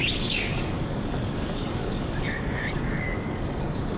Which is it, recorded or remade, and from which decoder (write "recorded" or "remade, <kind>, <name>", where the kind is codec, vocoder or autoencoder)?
remade, codec, DAC